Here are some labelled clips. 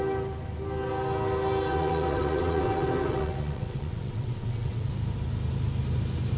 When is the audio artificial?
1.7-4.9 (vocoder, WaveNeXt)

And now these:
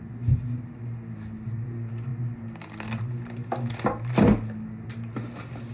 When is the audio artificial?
none

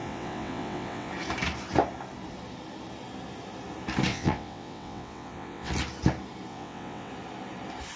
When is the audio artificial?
0.0-1.1 (vocoder, WaveNeXt); 4.1-5.7; 6.5-7.1

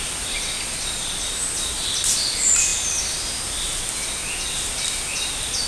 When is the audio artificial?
none

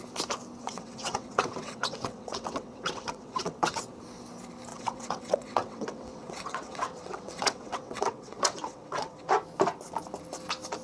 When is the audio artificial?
0.6-3.8 (vocoder, WaveNeXt); 4.7-9.3

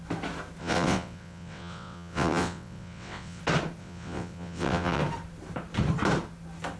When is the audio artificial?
0.6-3.4 (vocoder, WaveNeXt); 3.8-5.0

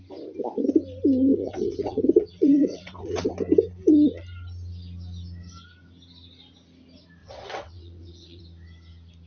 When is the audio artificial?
1.3-3.3 (vocoder, WaveNeXt); 7.2-8.4